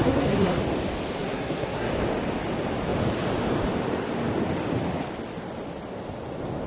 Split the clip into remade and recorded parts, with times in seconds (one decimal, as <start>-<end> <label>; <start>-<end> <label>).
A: 0.0-0.6 remade; 0.6-1.2 recorded; 1.2-1.9 remade; 1.9-6.7 recorded